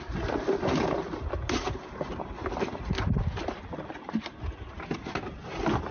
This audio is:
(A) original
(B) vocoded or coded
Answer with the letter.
A